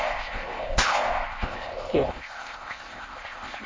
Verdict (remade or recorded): remade